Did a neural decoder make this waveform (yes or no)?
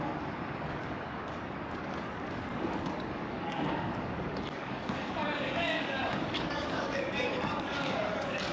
yes